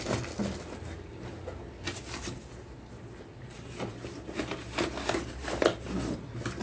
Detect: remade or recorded recorded